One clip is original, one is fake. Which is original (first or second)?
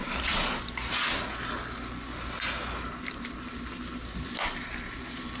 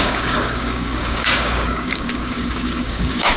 first